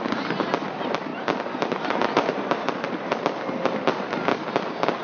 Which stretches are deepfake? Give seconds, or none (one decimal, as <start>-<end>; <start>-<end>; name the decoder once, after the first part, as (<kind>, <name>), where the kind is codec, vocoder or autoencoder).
none